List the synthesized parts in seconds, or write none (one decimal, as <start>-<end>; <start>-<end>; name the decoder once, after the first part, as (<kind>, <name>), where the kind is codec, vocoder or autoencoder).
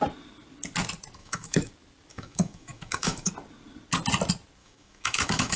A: 1.2-1.7 (autoencoder, DAC-VAE); 2.1-3.3; 4.6-5.6